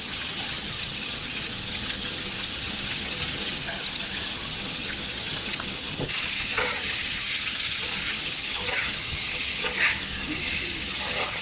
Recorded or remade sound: remade